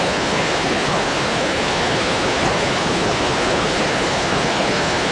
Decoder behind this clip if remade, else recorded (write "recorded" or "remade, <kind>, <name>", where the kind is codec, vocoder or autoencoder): remade, codec, HILCodec